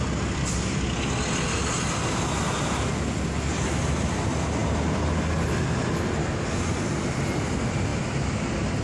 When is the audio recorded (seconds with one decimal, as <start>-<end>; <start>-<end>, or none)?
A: 0.0-8.8